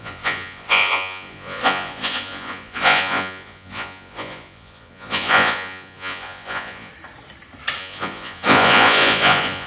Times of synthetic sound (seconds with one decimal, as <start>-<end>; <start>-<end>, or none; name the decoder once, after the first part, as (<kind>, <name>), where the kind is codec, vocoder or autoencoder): 0.0-6.9 (vocoder, Vocos); 7.8-9.7